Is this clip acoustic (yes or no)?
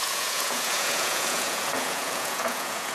no